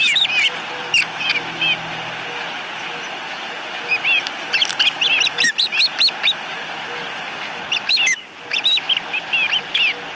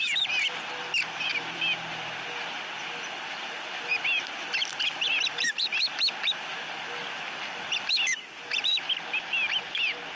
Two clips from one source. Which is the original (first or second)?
first